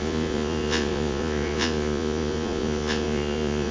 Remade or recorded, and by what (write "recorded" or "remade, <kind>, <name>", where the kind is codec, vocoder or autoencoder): remade, vocoder, Vocos